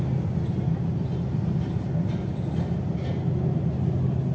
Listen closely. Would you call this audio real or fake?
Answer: real